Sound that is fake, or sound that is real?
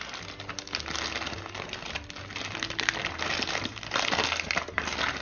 real